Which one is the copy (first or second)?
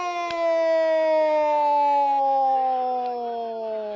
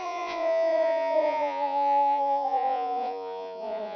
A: second